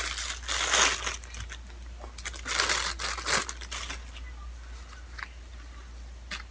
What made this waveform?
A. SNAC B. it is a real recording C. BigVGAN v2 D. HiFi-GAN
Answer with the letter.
B